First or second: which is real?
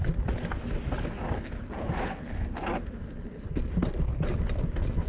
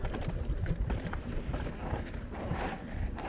first